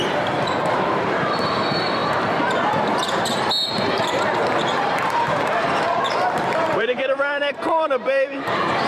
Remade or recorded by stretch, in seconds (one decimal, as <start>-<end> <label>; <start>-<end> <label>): 0.0-2.0 remade; 2.0-3.7 recorded; 3.7-8.9 remade